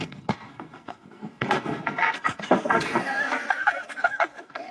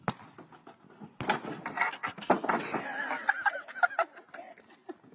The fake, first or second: first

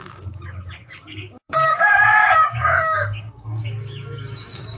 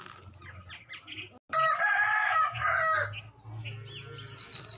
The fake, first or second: first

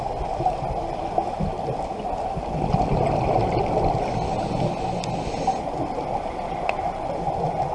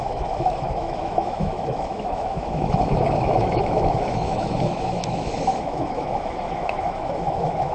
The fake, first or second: second